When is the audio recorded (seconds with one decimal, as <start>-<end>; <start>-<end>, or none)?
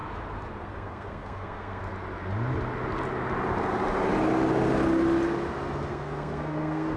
0.0-0.6; 1.8-5.9